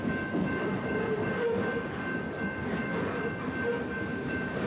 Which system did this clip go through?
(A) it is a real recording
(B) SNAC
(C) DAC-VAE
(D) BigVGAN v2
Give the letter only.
A